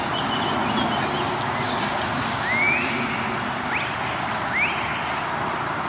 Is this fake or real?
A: real